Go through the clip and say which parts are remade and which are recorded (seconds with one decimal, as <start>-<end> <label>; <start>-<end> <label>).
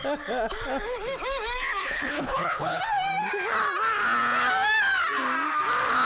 0.0-1.8 recorded; 1.8-2.8 remade; 2.8-6.0 recorded